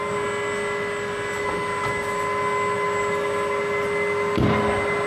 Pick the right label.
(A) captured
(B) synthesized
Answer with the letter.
A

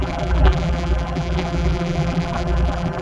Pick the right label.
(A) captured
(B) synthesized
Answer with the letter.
B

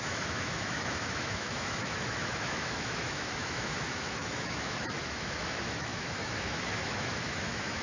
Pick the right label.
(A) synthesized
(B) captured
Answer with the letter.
A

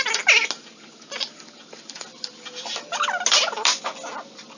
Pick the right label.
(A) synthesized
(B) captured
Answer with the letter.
B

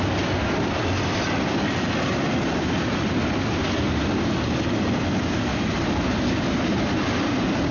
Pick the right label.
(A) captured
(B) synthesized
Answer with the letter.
A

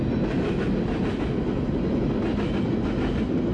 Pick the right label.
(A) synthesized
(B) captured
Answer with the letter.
B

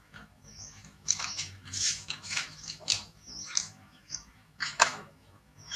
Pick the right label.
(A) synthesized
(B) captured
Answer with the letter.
A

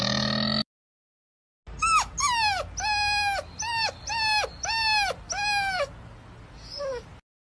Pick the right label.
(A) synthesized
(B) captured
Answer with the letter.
B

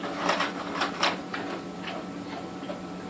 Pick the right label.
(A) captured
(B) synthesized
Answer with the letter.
A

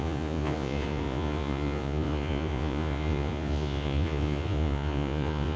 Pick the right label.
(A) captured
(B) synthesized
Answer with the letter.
B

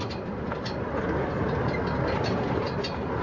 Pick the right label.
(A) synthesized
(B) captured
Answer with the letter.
B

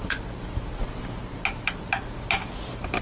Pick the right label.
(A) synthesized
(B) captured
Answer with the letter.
B